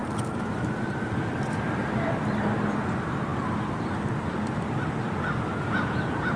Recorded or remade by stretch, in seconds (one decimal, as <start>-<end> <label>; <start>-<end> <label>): 0.0-6.4 recorded